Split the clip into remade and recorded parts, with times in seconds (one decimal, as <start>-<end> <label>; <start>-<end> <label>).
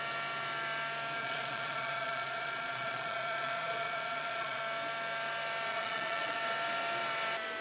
0.0-1.2 recorded; 1.2-4.6 remade; 4.6-5.7 recorded; 5.7-6.4 remade; 6.4-7.6 recorded